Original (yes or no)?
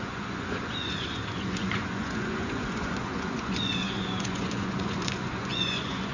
no